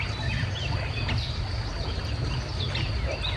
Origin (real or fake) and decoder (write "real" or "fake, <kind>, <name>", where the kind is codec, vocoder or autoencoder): real